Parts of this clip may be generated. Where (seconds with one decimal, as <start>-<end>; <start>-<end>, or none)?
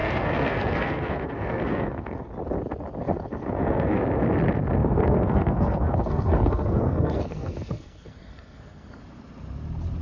0.0-2.3; 3.0-4.0; 4.8-9.0